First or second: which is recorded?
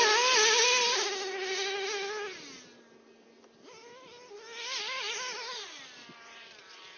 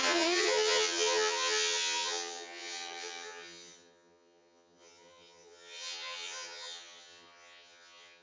first